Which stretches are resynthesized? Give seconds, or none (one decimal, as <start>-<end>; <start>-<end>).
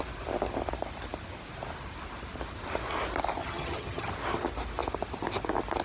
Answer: 3.4-4.1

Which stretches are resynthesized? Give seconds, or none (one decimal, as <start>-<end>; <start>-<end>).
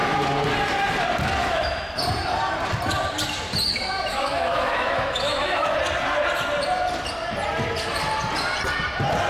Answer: 1.4-1.9; 3.7-5.7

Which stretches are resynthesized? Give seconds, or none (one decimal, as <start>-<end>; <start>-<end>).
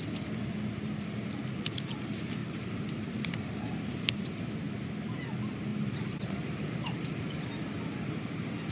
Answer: 2.4-3.6; 5.7-7.2